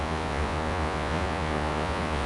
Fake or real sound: fake